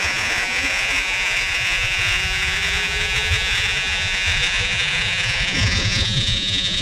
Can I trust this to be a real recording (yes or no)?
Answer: no